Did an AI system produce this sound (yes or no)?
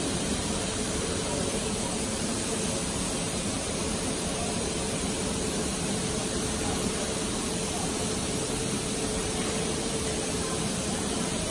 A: yes